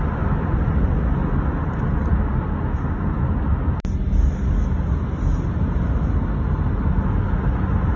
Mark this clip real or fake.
real